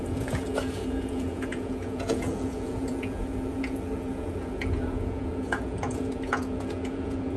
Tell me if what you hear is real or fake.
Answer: fake